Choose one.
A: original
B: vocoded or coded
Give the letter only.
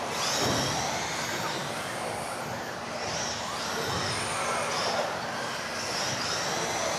A